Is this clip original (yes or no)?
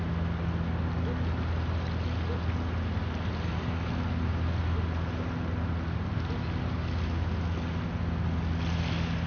yes